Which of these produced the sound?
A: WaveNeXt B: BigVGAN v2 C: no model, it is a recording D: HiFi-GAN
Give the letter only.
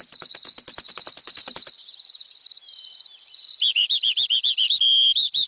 C